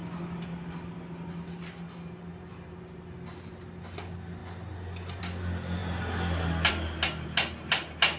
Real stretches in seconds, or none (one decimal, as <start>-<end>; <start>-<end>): 0.0-8.2